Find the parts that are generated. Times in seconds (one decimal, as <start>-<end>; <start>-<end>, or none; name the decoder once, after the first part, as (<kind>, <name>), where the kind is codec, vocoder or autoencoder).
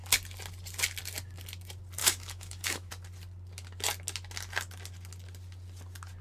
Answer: 2.0-2.9 (autoencoder, DAC-VAE)